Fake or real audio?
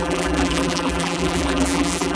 fake